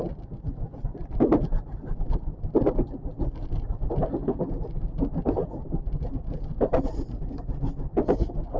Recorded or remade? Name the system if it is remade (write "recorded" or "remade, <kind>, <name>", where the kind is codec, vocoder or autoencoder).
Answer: recorded